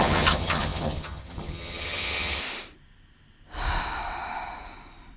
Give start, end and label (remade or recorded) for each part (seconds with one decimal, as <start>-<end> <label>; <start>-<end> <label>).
0.0-2.4 remade; 2.4-5.2 recorded

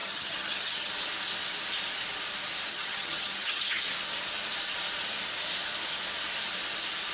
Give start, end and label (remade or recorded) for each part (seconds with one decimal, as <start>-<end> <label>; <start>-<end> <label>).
0.0-0.9 remade; 0.9-2.7 recorded; 2.7-3.8 remade; 3.8-7.1 recorded